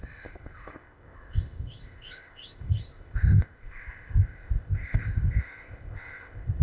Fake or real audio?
fake